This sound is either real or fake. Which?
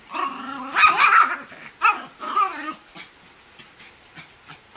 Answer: real